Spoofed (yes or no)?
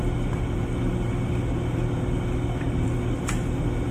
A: no